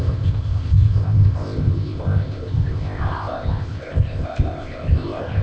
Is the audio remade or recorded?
remade